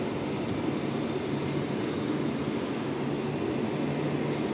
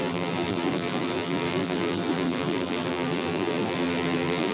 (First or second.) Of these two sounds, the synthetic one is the second